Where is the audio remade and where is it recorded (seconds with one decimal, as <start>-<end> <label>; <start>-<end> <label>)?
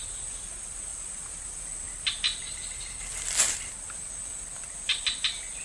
0.0-5.6 recorded